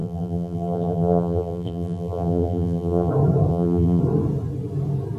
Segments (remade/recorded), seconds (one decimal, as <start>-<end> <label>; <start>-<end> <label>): 0.0-3.1 remade; 3.1-3.5 recorded; 3.5-4.0 remade; 4.0-5.2 recorded